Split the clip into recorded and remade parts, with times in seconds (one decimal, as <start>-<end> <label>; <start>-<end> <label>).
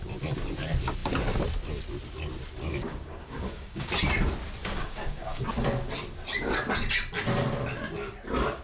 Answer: 0.0-2.7 recorded; 2.7-3.9 remade; 3.9-4.6 recorded; 4.6-5.4 remade; 5.4-8.6 recorded